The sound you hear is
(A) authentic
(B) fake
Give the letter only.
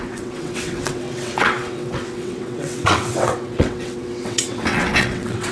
B